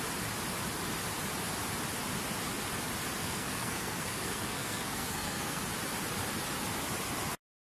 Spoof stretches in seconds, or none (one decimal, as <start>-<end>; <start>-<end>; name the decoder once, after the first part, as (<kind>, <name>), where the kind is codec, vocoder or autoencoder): 3.2-5.6 (codec, SNAC)